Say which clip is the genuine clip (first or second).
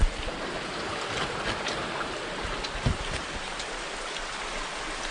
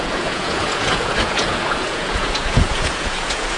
first